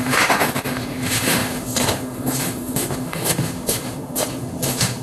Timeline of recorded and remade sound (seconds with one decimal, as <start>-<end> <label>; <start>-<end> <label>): 0.0-5.0 remade